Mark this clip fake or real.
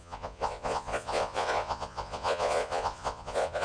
fake